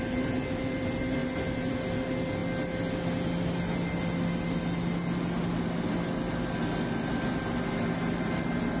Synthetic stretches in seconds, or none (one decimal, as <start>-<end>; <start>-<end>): none